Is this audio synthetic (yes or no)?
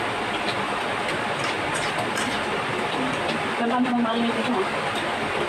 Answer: no